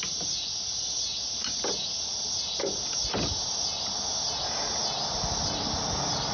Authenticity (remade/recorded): recorded